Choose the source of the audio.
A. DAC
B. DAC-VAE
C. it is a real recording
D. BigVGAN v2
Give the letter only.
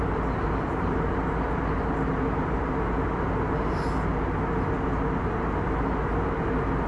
C